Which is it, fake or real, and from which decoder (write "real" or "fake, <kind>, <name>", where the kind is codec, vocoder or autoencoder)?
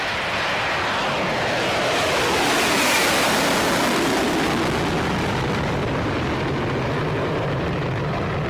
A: real